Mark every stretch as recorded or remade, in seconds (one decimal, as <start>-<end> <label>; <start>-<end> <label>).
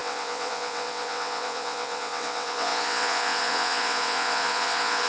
0.0-5.1 remade